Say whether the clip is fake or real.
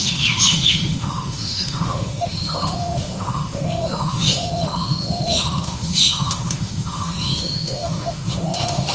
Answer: fake